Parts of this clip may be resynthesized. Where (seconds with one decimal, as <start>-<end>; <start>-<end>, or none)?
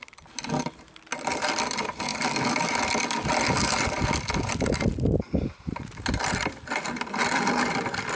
none